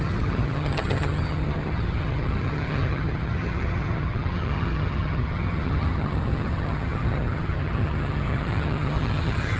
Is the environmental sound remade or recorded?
remade